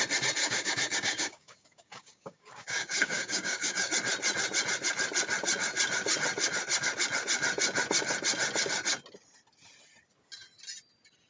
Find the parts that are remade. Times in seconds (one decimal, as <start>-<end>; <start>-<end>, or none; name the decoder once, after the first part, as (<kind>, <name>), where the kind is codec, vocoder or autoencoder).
0.4-3.9 (codec, DAC)